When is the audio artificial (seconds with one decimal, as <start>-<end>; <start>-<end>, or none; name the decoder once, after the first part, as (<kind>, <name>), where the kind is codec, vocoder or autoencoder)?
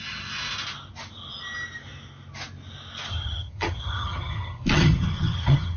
3.1-5.8 (vocoder, HiFi-GAN)